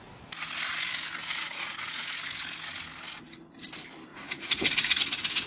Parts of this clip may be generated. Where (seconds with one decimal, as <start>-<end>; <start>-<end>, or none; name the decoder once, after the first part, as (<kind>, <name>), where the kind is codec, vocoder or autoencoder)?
1.2-1.9 (vocoder, Vocos); 4.1-5.0